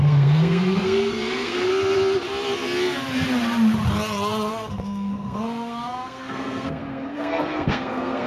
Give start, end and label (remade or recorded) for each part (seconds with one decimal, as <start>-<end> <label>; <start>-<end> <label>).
0.0-1.7 remade; 1.7-4.5 recorded; 4.5-8.3 remade

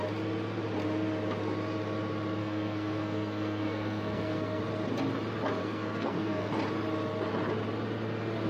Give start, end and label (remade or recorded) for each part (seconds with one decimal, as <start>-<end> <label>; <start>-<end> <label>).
0.0-2.4 recorded; 2.4-4.6 remade; 4.6-5.6 recorded; 5.6-6.5 remade; 6.5-8.5 recorded